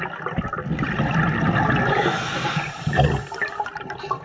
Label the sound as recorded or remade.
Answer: recorded